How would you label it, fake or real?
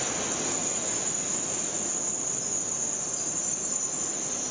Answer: real